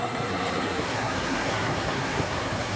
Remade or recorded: remade